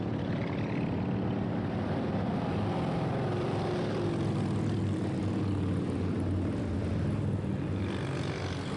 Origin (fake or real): real